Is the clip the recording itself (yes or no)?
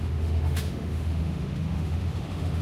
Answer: no